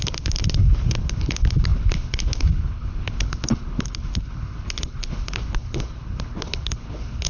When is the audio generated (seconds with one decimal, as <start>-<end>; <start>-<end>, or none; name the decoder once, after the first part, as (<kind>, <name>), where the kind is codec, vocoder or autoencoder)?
0.0-7.3 (codec, HILCodec)